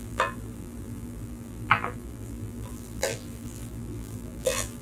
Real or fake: fake